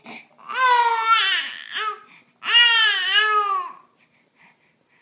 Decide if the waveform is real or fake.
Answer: real